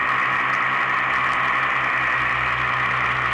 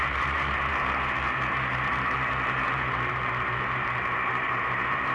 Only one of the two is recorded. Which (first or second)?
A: first